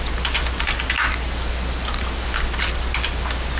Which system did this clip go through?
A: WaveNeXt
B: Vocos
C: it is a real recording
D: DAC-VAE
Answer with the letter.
C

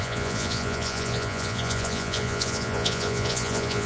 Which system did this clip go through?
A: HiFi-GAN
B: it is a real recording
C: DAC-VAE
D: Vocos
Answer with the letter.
D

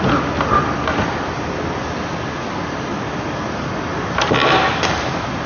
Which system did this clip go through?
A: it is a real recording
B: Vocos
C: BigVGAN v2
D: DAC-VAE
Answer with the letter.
A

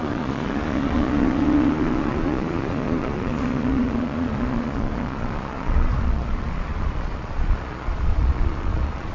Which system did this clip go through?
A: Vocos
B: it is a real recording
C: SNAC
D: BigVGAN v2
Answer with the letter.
A